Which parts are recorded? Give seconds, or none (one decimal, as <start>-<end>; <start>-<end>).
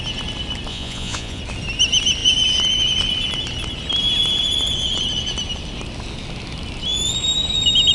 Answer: 0.0-0.7; 1.4-7.9